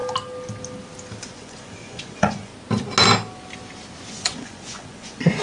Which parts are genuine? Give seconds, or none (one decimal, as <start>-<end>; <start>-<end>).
0.0-1.2; 2.5-4.1